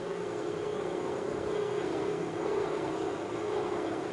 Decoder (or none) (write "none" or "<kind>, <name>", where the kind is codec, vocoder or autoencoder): codec, SNAC